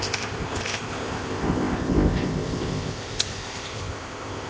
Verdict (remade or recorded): remade